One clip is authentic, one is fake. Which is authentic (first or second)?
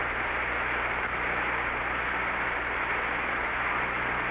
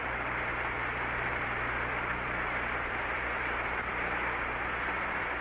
first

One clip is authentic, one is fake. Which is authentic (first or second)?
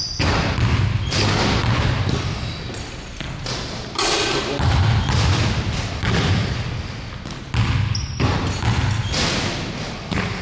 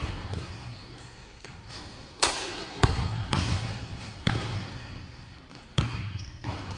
first